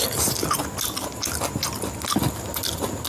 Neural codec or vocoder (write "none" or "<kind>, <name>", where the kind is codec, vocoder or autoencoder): none